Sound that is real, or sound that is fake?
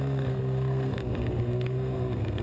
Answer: fake